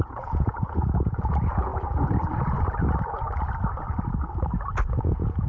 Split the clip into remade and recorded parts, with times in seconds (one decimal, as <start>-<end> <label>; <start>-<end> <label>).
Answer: 0.0-1.7 remade; 1.7-5.0 recorded; 5.0-5.5 remade